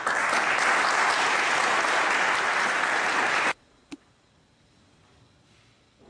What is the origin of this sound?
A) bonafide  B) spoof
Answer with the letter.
A